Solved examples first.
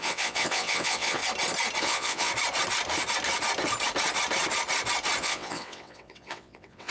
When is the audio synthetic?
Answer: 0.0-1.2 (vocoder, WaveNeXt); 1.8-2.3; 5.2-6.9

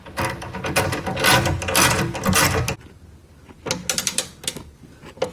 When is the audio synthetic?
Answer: none

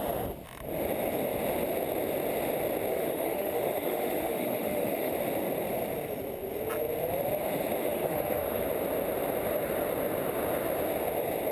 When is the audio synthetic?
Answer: 2.9-5.1 (autoencoder, DAC-VAE); 7.8-8.6

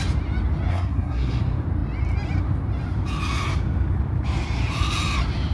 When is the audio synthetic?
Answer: 0.7-1.4 (codec, SNAC)

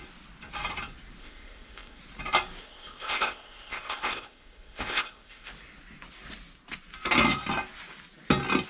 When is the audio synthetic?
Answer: 1.2-2.0 (codec, ZipCodec); 2.6-5.5

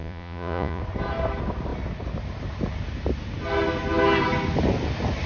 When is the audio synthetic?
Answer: 0.0-0.8 (vocoder, Vocos)

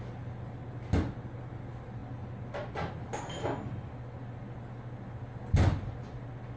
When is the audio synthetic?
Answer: none